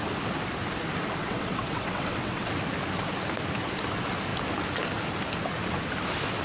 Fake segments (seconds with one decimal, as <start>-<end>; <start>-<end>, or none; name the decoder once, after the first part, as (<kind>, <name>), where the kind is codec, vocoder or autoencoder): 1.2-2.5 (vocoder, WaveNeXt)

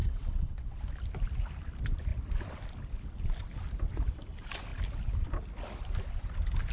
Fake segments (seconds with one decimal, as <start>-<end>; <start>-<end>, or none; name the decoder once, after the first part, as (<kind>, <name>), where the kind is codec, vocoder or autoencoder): 0.0-0.8 (vocoder, WaveNeXt)

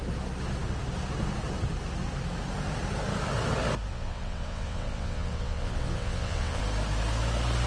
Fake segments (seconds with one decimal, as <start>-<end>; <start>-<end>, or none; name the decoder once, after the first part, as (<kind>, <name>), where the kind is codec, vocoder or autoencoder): 3.9-6.6 (vocoder, WaveNeXt)